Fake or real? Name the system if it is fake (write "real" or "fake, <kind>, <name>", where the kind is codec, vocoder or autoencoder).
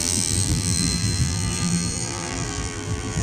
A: fake, vocoder, BigVGAN v2